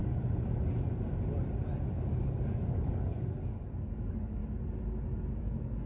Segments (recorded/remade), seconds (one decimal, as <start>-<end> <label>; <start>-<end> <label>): 0.0-1.9 recorded; 1.9-4.4 remade; 4.4-5.4 recorded; 5.4-5.9 remade